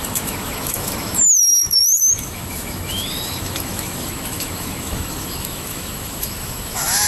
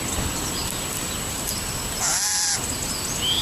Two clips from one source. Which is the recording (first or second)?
second